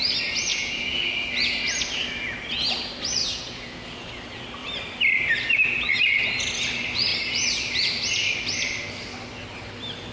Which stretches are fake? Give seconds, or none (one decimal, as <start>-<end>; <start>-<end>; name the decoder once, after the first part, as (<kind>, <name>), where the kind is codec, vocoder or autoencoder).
0.5-1.1 (vocoder, Vocos); 3.2-3.9